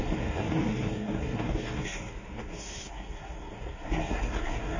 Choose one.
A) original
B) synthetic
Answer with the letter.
B